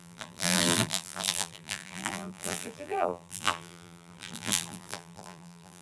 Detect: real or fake fake